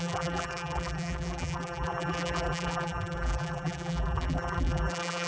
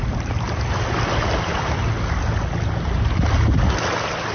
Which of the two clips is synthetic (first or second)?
first